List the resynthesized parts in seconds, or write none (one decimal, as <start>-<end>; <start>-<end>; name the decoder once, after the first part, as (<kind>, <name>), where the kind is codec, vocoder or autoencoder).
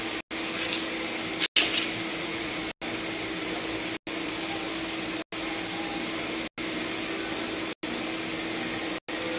2.1-2.6 (vocoder, Vocos)